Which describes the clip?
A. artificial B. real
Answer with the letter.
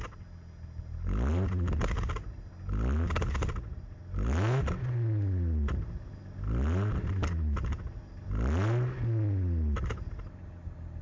B